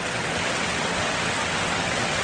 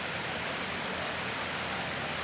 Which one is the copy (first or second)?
first